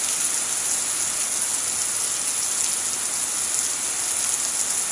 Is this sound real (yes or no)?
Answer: yes